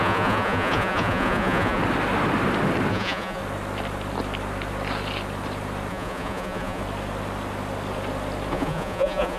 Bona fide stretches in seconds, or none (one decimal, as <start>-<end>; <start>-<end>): 1.8-2.9; 3.4-5.9; 6.8-8.5